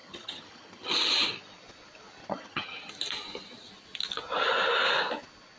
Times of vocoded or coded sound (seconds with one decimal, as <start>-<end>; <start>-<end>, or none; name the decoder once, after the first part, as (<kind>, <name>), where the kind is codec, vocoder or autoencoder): 0.0-1.1 (vocoder, HiFi-GAN); 2.2-2.9